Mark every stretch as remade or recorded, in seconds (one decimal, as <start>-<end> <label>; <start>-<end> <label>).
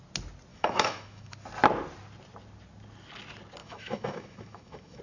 0.0-0.5 recorded; 0.5-1.3 remade; 1.3-3.6 recorded; 3.6-5.0 remade